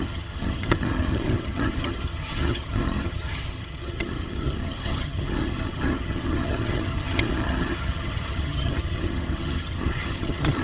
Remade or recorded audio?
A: remade